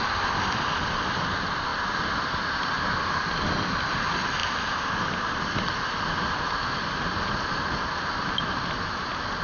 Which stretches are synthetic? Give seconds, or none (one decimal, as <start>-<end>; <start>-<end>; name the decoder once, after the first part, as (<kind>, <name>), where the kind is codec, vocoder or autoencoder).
none